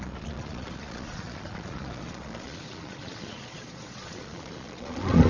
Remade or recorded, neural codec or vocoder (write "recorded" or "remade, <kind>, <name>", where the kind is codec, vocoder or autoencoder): remade, vocoder, Vocos